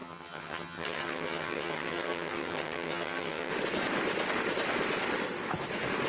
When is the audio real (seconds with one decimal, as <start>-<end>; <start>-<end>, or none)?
3.5-6.1